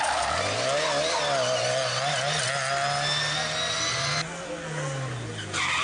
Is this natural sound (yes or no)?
yes